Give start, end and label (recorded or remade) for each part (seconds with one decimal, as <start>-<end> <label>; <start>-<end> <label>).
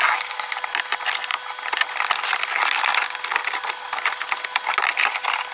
0.0-5.5 recorded